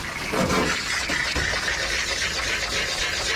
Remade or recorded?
recorded